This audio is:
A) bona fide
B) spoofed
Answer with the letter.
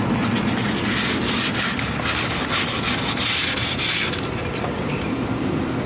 A